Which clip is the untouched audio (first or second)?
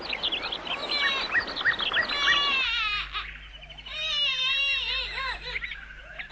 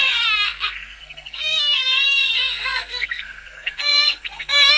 first